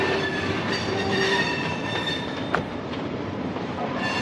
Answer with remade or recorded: remade